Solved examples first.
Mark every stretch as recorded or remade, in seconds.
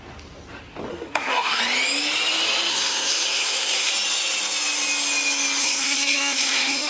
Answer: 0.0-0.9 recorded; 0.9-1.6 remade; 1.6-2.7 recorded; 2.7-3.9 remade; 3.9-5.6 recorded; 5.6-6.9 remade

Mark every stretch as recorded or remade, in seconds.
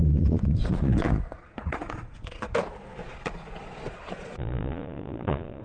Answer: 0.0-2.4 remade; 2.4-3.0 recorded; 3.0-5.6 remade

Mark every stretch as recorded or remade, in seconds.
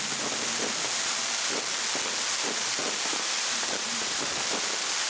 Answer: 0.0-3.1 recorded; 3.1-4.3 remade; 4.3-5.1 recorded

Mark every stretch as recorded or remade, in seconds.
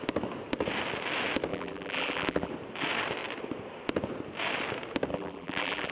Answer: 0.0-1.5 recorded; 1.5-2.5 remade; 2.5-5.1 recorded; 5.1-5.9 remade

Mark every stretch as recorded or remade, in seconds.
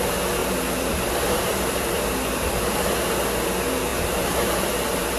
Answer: 0.0-0.4 recorded; 0.4-1.1 remade; 1.1-1.5 recorded; 1.5-2.7 remade; 2.7-5.2 recorded